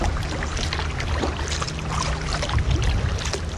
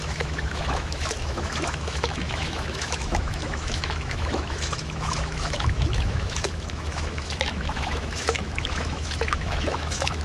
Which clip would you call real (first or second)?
first